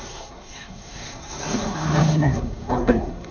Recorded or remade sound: remade